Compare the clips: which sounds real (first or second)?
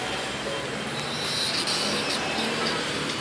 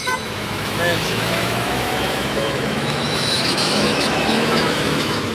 first